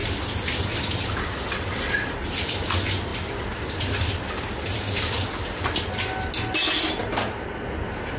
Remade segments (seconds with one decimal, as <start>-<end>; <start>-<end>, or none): none